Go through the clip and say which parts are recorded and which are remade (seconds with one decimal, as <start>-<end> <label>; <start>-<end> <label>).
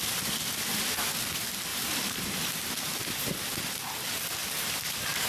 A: 0.0-1.7 recorded; 1.7-3.3 remade; 3.3-4.4 recorded; 4.4-5.3 remade